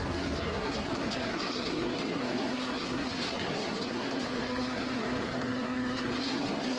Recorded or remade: remade